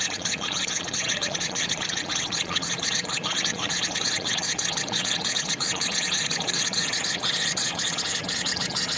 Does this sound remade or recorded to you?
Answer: remade